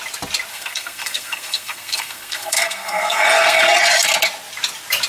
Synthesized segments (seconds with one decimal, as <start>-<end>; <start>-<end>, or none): 0.5-3.6